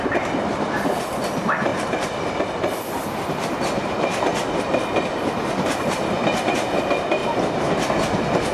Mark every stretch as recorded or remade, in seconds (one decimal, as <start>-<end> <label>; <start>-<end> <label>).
0.0-1.7 recorded; 1.7-2.3 remade; 2.3-4.3 recorded; 4.3-6.8 remade; 6.8-8.5 recorded